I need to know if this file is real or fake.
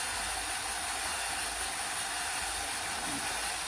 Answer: real